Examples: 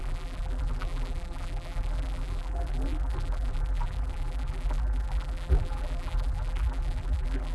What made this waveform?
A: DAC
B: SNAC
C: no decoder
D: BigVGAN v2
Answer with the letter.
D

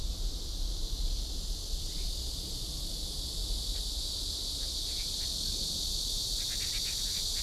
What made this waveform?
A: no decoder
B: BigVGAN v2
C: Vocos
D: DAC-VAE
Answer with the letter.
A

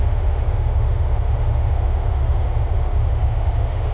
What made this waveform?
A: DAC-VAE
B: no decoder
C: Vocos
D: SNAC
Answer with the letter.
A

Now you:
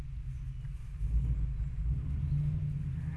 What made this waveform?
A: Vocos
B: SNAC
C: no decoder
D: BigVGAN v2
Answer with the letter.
C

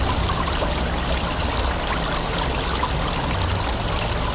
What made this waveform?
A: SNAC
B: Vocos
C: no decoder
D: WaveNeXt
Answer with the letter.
C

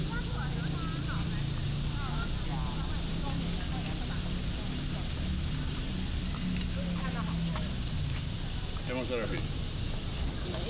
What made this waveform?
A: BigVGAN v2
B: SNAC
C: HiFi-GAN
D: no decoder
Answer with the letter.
D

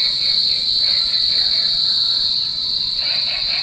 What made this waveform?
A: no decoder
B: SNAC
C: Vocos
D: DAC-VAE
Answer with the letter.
C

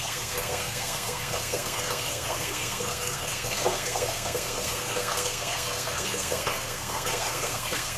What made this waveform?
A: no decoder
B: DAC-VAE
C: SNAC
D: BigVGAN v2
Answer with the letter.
C